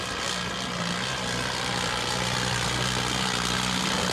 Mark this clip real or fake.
real